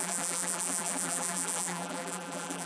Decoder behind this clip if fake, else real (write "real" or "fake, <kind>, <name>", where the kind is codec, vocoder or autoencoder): fake, vocoder, BigVGAN v2